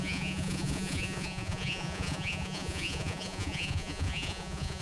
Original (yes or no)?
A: no